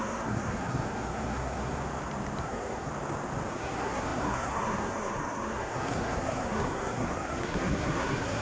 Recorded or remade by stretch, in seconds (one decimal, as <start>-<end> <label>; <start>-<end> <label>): 0.0-1.8 remade; 1.8-2.4 recorded; 2.4-2.9 remade; 2.9-3.5 recorded; 3.5-8.4 remade

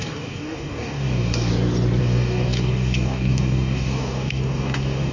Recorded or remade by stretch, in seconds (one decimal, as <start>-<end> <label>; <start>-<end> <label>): 0.0-1.5 remade; 1.5-2.0 recorded; 2.0-5.1 remade

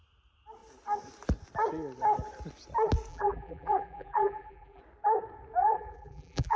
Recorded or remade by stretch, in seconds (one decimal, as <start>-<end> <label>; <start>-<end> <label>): 0.0-3.1 recorded; 3.1-4.8 remade; 4.8-5.6 recorded; 5.6-6.6 remade